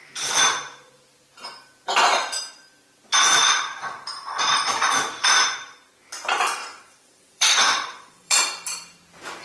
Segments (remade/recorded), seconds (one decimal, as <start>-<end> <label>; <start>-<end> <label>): 0.0-6.6 recorded; 6.6-8.4 remade; 8.4-9.4 recorded